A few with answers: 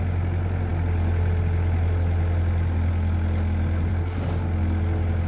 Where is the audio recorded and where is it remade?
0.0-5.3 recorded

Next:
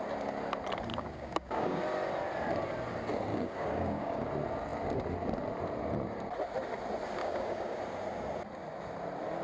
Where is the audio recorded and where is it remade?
0.0-0.9 recorded; 0.9-1.8 remade; 1.8-3.3 recorded; 3.3-4.3 remade; 4.3-7.2 recorded; 7.2-7.8 remade; 7.8-9.4 recorded

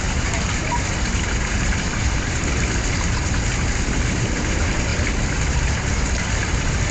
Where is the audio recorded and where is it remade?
0.0-4.9 remade; 4.9-5.5 recorded; 5.5-6.9 remade

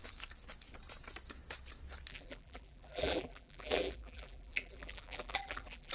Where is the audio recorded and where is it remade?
0.0-2.1 recorded; 2.1-5.9 remade

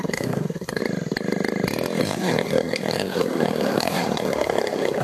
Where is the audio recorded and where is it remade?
0.0-0.8 remade; 0.8-2.0 recorded; 2.0-5.0 remade